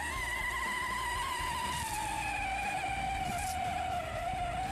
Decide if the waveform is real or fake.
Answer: real